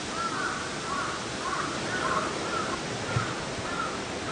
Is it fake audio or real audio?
real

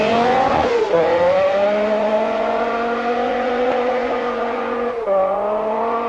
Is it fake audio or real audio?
fake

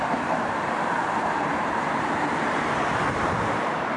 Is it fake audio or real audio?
fake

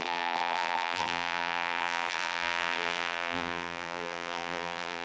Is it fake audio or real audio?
fake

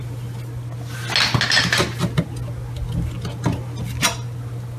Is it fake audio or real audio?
real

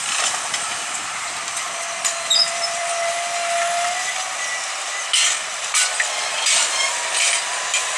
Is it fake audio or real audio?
real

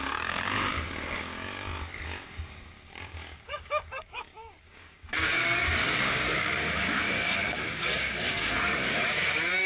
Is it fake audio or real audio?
fake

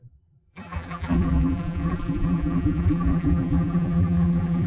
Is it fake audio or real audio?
fake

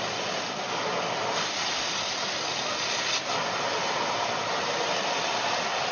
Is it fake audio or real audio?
real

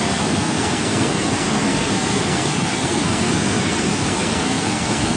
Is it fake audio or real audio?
fake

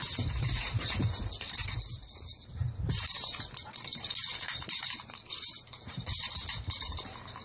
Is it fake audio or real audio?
fake